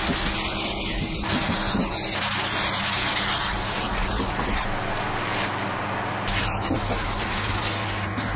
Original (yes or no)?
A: yes